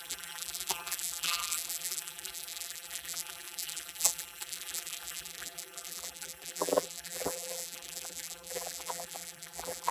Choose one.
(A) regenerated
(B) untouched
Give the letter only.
A